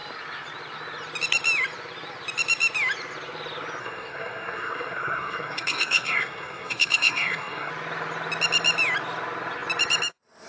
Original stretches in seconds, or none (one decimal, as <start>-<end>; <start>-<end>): 0.0-3.8; 7.7-10.5